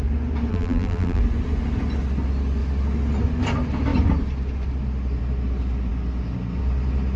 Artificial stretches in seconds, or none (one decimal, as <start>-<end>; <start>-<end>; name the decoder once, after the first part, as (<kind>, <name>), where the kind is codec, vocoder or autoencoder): 0.5-1.2 (vocoder, BigVGAN v2)